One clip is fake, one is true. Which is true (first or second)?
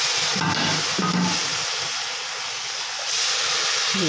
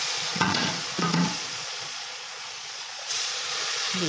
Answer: first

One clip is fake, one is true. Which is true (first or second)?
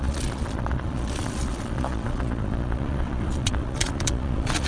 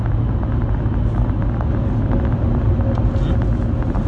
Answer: second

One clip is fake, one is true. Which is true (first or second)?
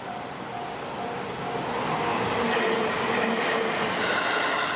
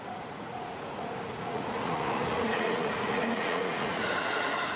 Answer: first